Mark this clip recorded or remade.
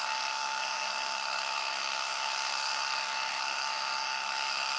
remade